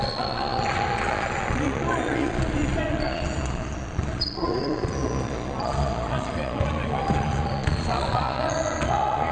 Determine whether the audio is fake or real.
fake